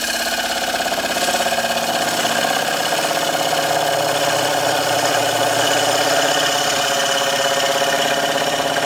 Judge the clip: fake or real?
real